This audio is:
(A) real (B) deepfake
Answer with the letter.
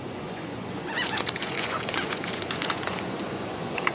B